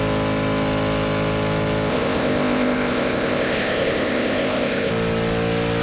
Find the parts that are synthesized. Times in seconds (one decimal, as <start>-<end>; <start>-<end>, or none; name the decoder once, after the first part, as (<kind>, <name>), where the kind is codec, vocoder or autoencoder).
1.9-4.9 (codec, ZipCodec)